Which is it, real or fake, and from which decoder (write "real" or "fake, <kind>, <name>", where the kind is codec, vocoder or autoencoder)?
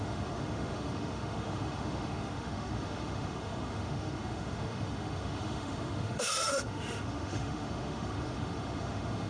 fake, autoencoder, DAC-VAE